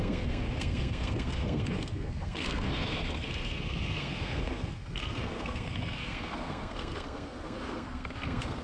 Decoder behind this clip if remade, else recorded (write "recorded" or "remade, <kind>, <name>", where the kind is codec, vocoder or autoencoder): remade, codec, SNAC